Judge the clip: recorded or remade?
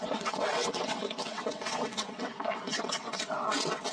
remade